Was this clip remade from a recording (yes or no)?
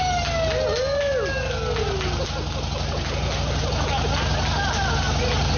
no